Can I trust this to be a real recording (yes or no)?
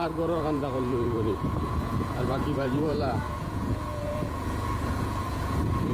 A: no